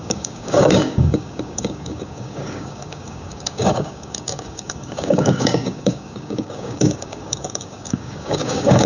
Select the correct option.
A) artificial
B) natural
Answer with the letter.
A